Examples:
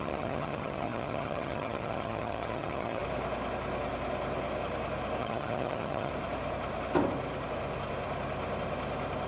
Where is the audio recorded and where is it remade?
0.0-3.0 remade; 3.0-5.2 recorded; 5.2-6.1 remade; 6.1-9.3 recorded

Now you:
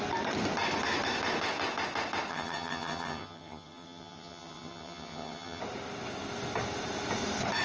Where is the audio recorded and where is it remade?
0.0-2.3 recorded; 2.3-5.6 remade; 5.6-7.6 recorded

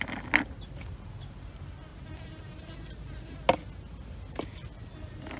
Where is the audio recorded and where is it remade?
0.0-5.4 recorded

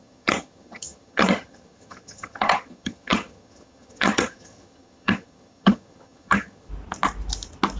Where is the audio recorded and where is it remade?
0.0-6.7 remade; 6.7-7.8 recorded

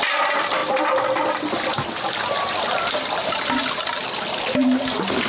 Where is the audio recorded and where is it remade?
0.0-5.3 recorded